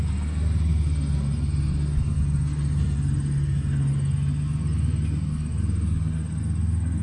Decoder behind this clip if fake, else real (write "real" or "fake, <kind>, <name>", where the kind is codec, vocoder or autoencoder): real